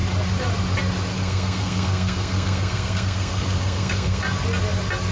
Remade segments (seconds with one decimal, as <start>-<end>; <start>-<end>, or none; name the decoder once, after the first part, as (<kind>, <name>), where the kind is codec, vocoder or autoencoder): 1.1-4.2 (codec, SNAC)